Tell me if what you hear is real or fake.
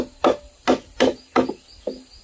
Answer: real